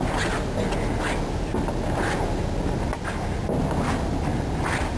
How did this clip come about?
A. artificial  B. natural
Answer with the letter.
B